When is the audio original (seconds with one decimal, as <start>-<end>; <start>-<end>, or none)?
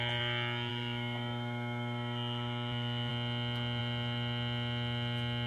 0.0-0.7; 3.1-5.5